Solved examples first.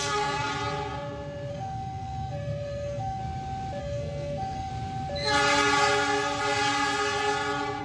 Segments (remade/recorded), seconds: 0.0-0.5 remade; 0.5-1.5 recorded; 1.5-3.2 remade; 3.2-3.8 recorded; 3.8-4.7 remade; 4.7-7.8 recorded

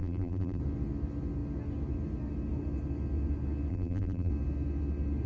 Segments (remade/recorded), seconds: 0.0-0.6 remade; 0.6-3.7 recorded; 3.7-4.3 remade; 4.3-5.3 recorded

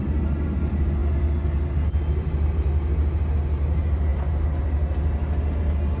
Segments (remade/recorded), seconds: 0.0-6.0 recorded

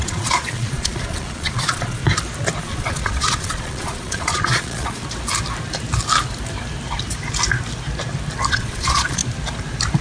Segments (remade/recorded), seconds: 0.0-2.0 remade; 2.0-2.6 recorded; 2.6-5.0 remade; 5.0-8.5 recorded; 8.5-9.2 remade; 9.2-10.0 recorded

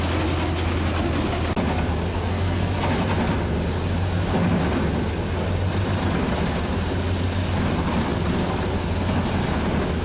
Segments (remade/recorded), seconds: 0.0-2.1 recorded; 2.1-2.7 remade; 2.7-10.0 recorded